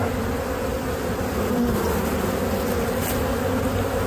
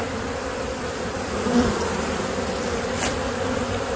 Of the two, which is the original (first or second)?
first